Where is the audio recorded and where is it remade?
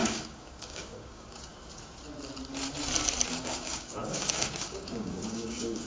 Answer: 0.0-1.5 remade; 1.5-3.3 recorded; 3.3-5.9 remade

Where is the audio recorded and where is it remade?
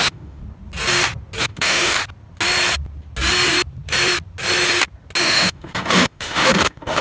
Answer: 0.0-0.4 remade; 0.4-1.4 recorded; 1.4-2.0 remade; 2.0-5.2 recorded; 5.2-7.0 remade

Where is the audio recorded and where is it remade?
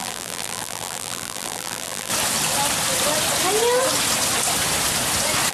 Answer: 0.0-2.1 remade; 2.1-5.5 recorded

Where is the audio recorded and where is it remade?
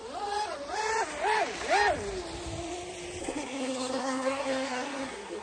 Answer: 0.0-3.2 recorded; 3.2-5.4 remade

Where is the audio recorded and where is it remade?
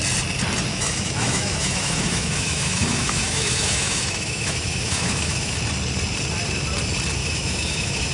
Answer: 0.0-0.7 recorded; 0.7-5.5 remade; 5.5-7.2 recorded; 7.2-8.1 remade